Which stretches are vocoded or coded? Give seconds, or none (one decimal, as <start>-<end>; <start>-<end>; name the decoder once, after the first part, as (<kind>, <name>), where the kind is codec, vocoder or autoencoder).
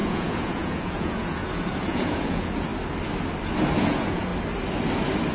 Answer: 0.0-2.7 (vocoder, Vocos); 3.8-4.3